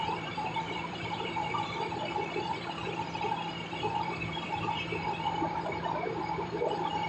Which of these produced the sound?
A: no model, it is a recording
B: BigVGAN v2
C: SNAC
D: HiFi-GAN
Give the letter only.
B